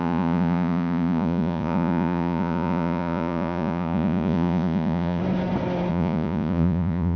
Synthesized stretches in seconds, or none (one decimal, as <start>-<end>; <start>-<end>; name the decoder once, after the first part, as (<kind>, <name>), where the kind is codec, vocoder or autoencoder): 0.0-5.2 (vocoder, Vocos); 5.9-7.2